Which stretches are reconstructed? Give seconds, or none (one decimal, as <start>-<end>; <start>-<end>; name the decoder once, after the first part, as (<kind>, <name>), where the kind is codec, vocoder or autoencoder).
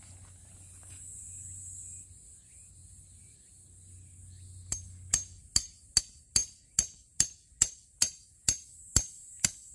none